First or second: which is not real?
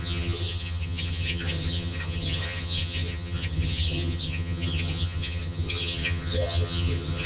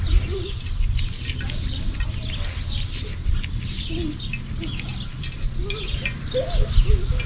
first